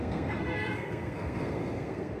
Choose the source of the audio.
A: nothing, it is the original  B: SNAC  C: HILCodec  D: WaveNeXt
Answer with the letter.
B